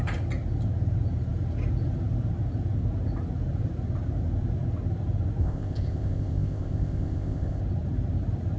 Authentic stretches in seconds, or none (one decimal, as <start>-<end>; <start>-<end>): 0.0-5.4; 7.6-8.6